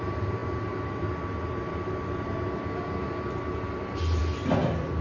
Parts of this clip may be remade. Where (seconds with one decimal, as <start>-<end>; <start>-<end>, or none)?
4.2-5.0